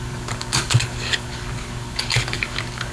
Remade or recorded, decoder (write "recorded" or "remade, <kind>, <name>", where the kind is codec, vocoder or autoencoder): remade, codec, DAC